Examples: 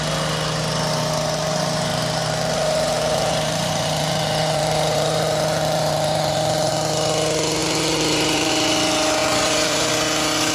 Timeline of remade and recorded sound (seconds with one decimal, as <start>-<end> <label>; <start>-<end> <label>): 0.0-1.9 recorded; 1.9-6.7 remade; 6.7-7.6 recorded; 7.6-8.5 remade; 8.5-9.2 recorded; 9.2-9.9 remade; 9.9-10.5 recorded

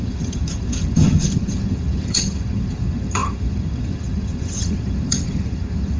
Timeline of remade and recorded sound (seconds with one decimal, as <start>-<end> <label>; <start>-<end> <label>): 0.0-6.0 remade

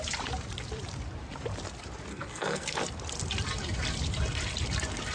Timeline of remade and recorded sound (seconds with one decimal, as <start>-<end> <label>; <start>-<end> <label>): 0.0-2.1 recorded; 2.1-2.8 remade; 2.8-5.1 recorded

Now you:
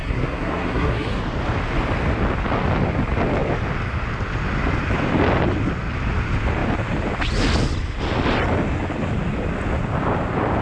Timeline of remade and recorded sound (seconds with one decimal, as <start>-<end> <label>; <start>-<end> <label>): 0.0-1.2 remade; 1.2-10.6 recorded

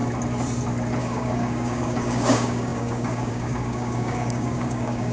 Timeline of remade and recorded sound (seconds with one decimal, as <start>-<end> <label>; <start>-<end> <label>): 0.0-1.0 recorded; 1.0-5.1 remade

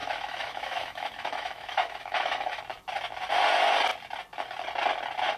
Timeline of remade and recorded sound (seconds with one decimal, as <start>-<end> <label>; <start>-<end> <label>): 0.0-2.6 remade; 2.6-5.4 recorded

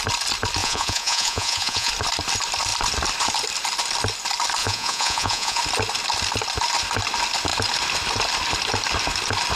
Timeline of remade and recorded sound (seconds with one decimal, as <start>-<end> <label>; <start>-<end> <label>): 0.0-0.6 recorded; 0.6-1.9 remade; 1.9-4.6 recorded; 4.6-5.6 remade; 5.6-9.6 recorded